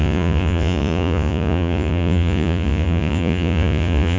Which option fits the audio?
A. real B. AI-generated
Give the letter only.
B